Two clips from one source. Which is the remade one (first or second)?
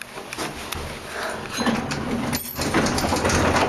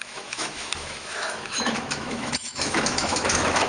second